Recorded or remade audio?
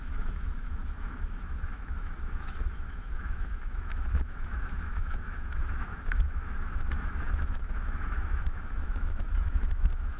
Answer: remade